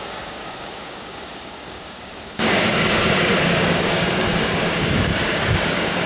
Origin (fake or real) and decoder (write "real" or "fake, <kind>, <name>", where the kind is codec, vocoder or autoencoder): fake, codec, DAC